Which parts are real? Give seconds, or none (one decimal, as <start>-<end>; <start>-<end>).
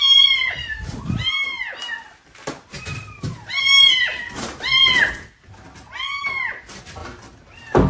0.0-7.9